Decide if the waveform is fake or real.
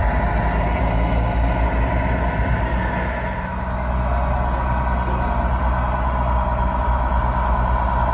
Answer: real